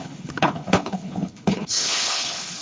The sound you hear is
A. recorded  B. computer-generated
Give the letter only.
B